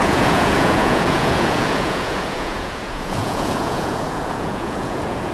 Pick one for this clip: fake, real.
fake